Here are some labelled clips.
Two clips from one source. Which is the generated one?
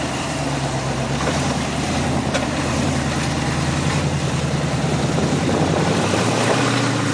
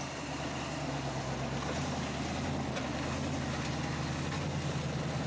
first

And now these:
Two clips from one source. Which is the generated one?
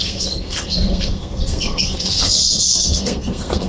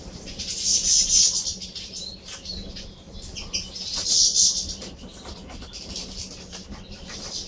first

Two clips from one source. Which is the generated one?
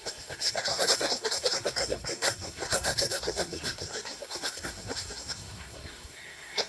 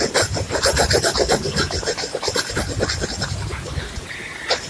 first